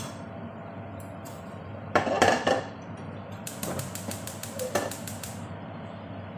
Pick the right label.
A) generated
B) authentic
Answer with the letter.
A